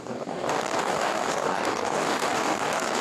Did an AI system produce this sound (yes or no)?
yes